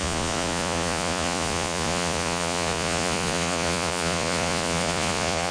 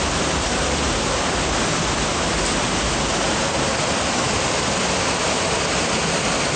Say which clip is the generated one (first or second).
first